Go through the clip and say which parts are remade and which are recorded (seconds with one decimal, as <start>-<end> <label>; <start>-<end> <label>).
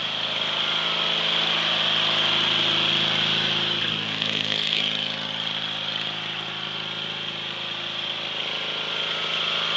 0.0-3.9 recorded; 3.9-4.8 remade; 4.8-9.8 recorded